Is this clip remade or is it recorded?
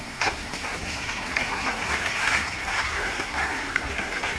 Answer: remade